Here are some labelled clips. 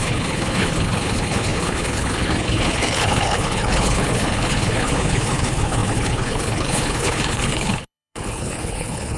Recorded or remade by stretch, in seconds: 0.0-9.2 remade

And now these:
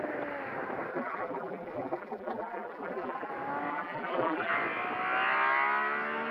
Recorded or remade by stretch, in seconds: 0.0-0.9 recorded; 0.9-3.3 remade; 3.3-3.7 recorded; 3.7-4.5 remade; 4.5-6.3 recorded

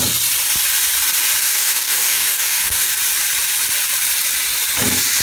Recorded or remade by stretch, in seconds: 0.0-1.4 recorded; 1.4-2.9 remade; 2.9-5.2 recorded

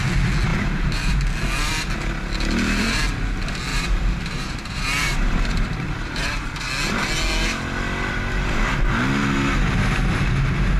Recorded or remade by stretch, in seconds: 0.0-0.5 recorded; 0.5-1.2 remade; 1.2-3.7 recorded; 3.7-6.7 remade; 6.7-10.8 recorded